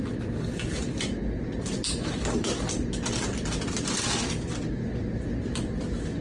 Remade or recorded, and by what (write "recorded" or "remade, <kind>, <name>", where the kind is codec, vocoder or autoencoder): recorded